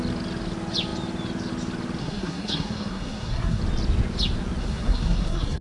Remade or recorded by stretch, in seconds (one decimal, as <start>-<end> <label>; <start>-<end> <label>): 0.0-2.0 recorded; 2.0-3.6 remade; 3.6-4.6 recorded; 4.6-5.6 remade